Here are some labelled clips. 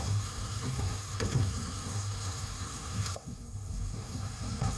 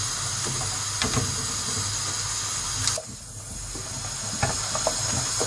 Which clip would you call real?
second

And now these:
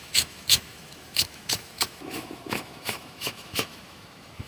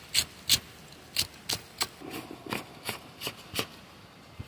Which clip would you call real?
second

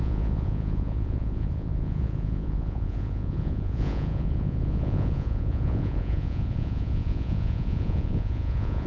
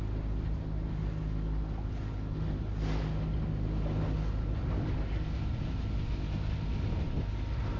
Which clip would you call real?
second